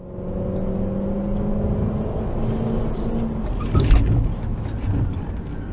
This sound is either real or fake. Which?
real